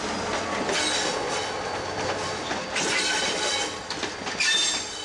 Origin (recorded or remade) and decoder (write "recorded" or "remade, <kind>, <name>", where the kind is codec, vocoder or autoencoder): recorded